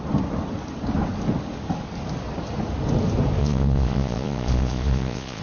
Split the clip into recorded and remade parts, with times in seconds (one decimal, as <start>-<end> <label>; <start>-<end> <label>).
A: 0.0-3.4 recorded; 3.4-5.4 remade